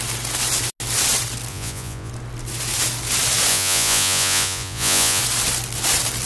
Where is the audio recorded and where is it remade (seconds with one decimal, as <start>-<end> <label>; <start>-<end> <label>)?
0.0-1.5 recorded; 1.5-2.1 remade; 2.1-3.5 recorded; 3.5-5.2 remade; 5.2-6.3 recorded